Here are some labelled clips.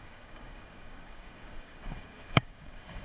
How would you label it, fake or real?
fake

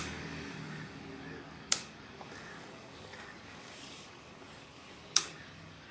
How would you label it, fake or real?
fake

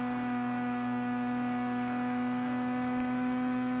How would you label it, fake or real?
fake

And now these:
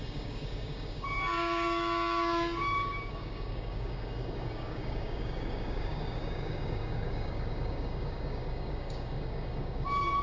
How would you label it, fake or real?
fake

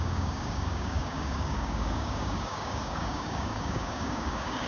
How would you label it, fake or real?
fake